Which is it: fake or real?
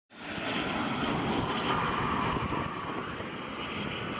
real